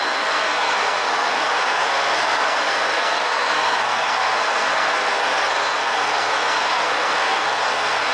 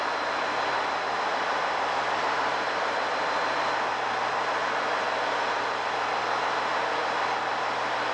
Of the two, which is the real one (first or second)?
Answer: second